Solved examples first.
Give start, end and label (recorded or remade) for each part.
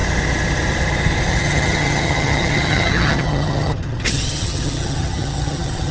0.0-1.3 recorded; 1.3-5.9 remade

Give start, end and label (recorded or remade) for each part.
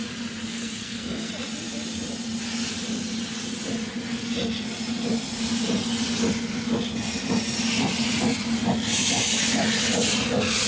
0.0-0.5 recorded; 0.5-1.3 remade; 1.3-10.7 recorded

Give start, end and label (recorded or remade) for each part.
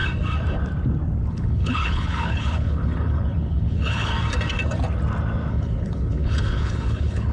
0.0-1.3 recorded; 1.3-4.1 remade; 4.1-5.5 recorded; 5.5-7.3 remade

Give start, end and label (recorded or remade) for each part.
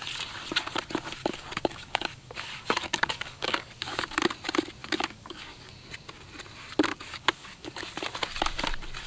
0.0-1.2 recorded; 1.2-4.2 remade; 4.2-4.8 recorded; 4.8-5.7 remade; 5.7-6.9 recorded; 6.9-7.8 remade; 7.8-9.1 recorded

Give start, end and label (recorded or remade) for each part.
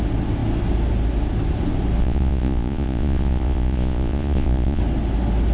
0.0-2.0 recorded; 2.0-4.8 remade; 4.8-5.5 recorded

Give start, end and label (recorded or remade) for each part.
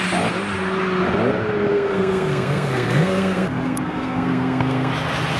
0.0-1.7 recorded; 1.7-4.9 remade; 4.9-5.4 recorded